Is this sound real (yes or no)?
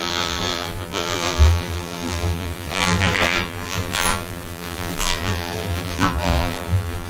no